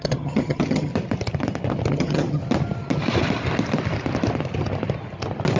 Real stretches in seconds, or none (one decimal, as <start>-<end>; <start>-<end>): 0.9-1.9; 2.4-5.6